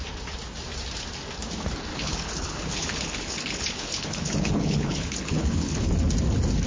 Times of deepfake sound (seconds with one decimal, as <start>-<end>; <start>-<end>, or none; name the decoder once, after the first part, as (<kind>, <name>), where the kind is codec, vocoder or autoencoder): 1.9-5.9 (codec, HILCodec)